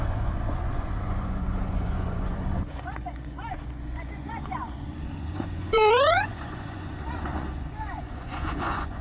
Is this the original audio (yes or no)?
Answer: no